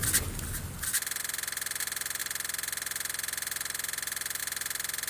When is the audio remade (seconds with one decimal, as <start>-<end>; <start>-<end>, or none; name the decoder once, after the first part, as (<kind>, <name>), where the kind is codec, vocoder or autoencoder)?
none